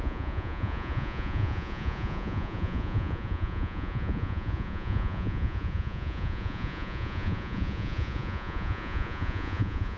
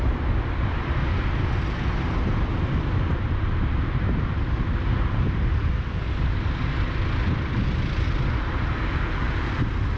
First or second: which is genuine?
second